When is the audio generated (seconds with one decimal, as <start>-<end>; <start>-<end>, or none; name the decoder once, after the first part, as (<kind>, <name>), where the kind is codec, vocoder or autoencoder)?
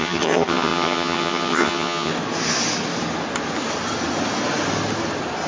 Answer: 0.0-2.1 (vocoder, HiFi-GAN)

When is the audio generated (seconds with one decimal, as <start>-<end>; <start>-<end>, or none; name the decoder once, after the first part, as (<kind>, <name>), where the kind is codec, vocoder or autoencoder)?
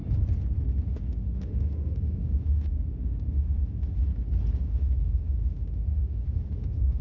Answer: 0.9-4.1 (autoencoder, DAC-VAE); 4.6-7.0